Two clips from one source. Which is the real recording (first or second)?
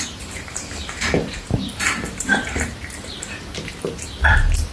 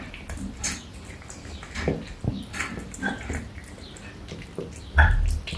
second